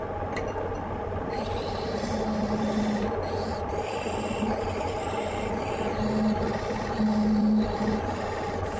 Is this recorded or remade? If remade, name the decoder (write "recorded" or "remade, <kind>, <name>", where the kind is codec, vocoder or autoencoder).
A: recorded